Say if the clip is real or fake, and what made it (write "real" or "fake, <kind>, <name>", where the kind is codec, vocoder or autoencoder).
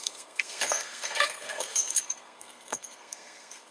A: fake, codec, SNAC